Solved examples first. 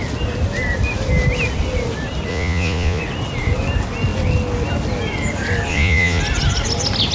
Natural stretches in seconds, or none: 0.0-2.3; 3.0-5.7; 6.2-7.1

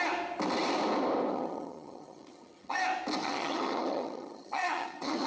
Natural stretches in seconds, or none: 0.0-1.3; 2.8-3.2

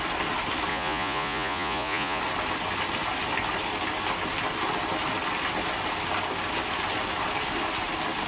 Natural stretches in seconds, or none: 0.0-0.7; 2.2-8.3

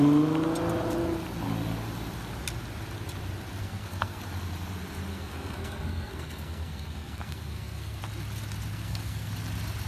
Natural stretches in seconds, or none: 0.0-3.6; 4.2-5.1; 8.0-8.7; 9.3-9.9

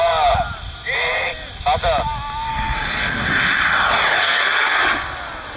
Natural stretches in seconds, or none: 0.0-2.5; 3.2-4.2; 4.8-5.6

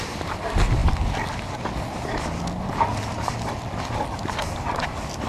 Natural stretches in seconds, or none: 0.0-5.3

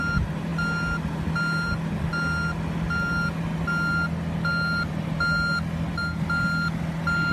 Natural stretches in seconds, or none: 0.0-7.3